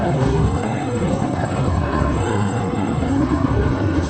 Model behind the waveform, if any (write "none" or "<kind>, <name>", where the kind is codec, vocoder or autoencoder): codec, SNAC